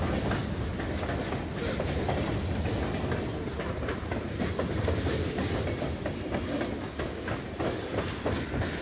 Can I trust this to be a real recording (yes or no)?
yes